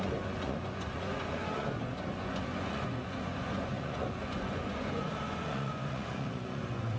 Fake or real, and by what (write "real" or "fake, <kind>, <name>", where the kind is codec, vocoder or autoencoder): fake, vocoder, Vocos